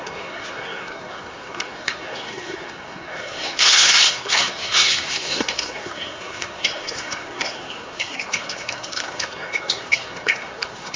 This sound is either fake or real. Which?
fake